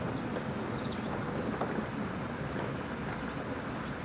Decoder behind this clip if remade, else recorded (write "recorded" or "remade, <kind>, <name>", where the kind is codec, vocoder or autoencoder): recorded